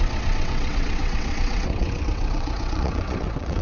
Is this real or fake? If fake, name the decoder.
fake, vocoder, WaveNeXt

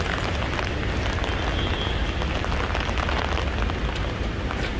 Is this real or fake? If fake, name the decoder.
real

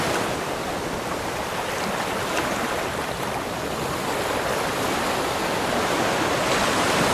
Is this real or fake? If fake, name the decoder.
real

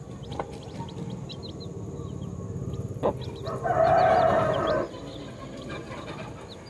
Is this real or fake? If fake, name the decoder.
real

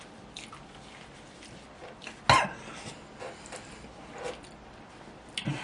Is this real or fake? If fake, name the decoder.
real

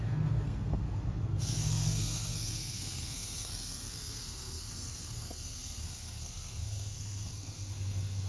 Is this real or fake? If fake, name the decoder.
fake, codec, SNAC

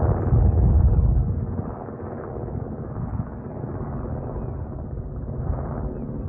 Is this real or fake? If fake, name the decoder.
real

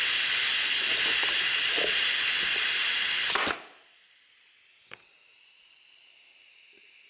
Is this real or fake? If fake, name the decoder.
real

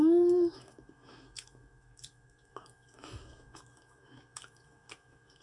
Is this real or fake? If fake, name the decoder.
fake, autoencoder, DAC-VAE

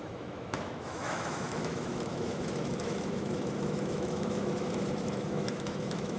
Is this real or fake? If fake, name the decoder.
fake, autoencoder, DAC-VAE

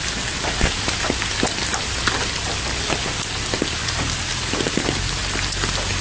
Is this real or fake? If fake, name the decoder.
real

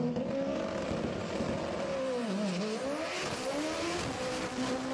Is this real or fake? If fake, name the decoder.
real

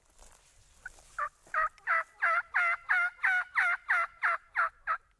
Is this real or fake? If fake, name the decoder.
real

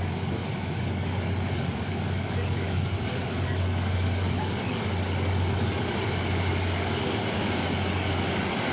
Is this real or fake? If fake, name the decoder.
fake, codec, DAC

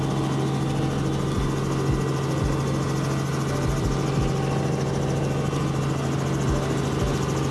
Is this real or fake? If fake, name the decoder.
real